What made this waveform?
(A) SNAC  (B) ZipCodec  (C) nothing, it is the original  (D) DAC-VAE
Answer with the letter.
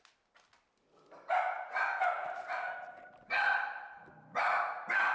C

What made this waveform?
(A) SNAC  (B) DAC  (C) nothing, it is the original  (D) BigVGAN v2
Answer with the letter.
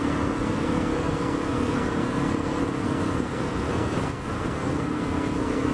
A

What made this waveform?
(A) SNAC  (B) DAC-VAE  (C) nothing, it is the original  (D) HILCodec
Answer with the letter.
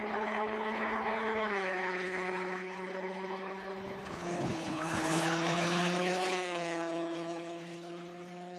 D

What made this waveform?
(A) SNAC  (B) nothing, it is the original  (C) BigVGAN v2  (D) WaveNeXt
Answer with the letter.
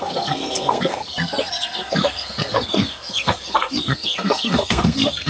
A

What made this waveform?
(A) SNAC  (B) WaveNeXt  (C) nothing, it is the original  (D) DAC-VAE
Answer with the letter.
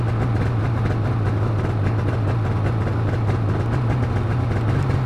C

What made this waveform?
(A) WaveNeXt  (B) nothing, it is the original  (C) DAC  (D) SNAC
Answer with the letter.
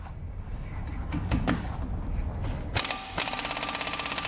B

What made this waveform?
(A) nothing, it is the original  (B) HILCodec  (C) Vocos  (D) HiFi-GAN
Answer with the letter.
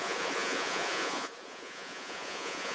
C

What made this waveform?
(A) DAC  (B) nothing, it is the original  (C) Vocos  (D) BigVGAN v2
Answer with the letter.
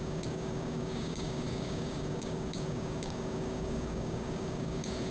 A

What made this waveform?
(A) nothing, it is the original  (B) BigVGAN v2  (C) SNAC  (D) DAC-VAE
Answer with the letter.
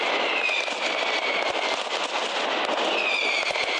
A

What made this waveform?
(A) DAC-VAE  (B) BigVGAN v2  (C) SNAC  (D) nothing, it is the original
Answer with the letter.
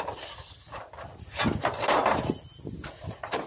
D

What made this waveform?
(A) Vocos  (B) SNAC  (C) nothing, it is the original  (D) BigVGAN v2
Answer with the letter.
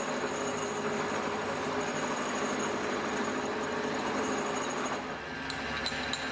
C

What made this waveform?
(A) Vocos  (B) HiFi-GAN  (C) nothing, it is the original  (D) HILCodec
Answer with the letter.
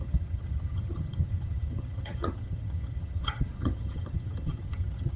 B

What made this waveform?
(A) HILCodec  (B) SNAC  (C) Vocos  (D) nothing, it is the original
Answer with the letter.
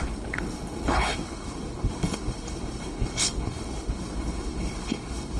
A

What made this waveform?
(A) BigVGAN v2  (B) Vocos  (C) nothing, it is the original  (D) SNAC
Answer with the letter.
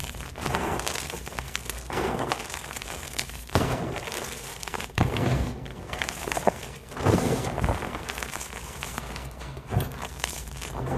D